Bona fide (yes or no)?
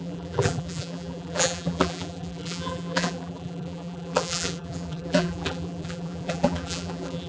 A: no